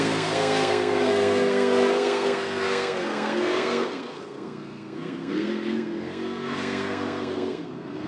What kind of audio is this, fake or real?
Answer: fake